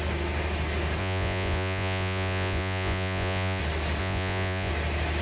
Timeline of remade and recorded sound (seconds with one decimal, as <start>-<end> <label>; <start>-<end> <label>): 0.0-1.0 recorded; 1.0-3.6 remade; 3.6-4.0 recorded; 4.0-4.7 remade; 4.7-5.2 recorded